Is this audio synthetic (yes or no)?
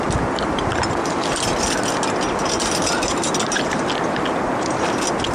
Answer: no